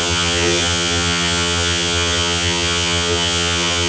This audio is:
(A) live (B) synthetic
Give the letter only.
B